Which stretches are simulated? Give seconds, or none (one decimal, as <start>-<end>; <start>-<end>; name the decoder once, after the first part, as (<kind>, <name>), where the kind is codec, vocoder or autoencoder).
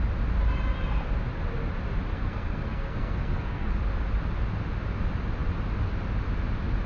2.1-3.7 (codec, SNAC)